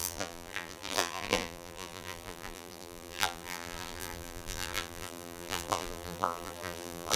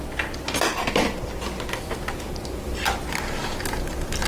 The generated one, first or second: first